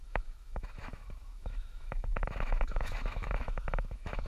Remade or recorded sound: remade